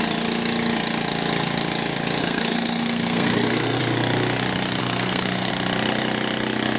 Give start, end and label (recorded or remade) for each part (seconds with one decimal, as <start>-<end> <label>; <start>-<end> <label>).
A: 0.0-2.2 recorded; 2.2-3.8 remade; 3.8-4.8 recorded; 4.8-5.5 remade; 5.5-6.8 recorded